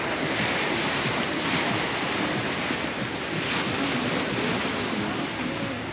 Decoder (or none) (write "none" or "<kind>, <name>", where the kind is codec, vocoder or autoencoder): none